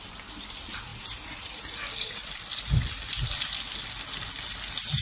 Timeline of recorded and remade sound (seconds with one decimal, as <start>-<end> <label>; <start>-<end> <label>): 0.0-5.0 recorded